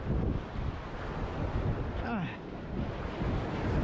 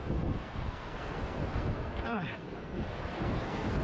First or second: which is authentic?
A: first